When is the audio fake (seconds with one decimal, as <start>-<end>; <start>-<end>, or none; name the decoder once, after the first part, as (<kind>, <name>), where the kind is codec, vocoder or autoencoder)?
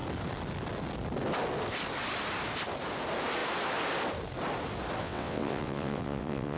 5.0-6.6 (vocoder, WaveNeXt)